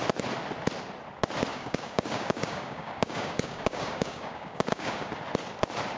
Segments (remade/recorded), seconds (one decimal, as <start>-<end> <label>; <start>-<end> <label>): 0.0-1.5 recorded; 1.5-5.1 remade; 5.1-6.0 recorded